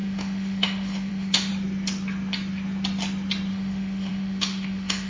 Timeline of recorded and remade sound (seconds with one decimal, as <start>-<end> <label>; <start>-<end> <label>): 0.0-1.5 remade; 1.5-3.5 recorded; 3.5-5.1 remade